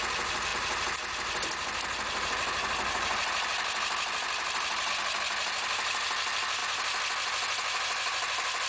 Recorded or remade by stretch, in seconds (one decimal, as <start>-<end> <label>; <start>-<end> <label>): 0.0-8.7 recorded